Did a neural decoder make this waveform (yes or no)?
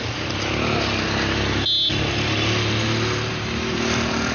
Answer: no